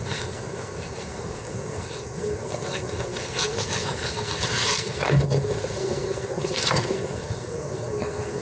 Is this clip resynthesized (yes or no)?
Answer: yes